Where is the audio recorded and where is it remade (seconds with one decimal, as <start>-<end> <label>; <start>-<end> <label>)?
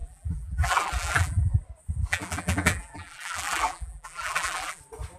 0.0-1.6 remade; 1.6-2.1 recorded; 2.1-4.8 remade; 4.8-5.2 recorded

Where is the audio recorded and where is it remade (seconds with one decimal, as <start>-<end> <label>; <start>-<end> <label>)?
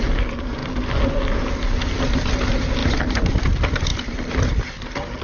0.0-5.2 recorded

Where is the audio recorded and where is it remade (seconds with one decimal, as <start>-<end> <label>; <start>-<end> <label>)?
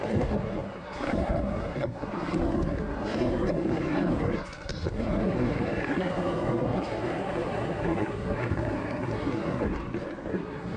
0.0-9.8 remade; 9.8-10.3 recorded; 10.3-10.8 remade